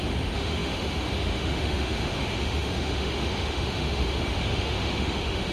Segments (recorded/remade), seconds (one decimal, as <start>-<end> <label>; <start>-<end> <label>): 0.0-5.5 remade